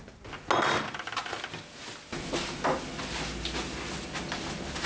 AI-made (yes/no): no